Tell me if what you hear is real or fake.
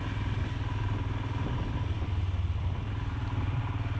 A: real